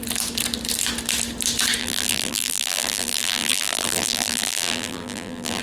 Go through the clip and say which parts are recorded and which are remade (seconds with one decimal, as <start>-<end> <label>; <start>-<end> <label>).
0.0-1.8 recorded; 1.8-5.6 remade